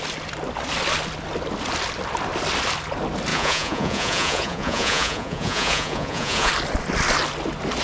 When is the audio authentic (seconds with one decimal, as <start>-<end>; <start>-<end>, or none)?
0.0-3.3; 6.5-7.8